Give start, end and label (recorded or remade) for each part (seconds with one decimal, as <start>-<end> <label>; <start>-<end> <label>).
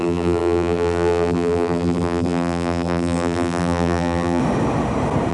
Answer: 0.0-4.4 remade; 4.4-5.3 recorded